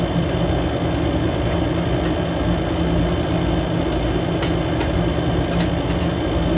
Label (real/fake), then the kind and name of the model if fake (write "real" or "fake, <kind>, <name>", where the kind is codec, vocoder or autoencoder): real